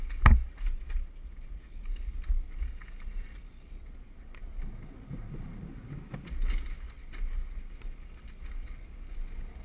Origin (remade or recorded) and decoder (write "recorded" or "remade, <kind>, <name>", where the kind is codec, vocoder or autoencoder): recorded